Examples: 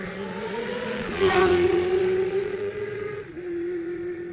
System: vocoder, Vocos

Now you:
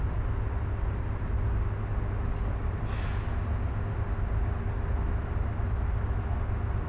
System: none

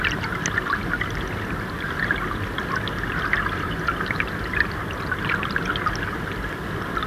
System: none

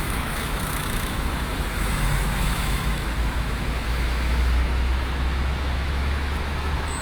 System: autoencoder, DAC-VAE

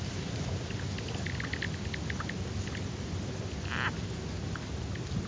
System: none